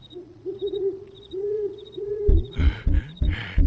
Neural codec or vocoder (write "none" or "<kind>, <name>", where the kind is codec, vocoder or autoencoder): vocoder, Vocos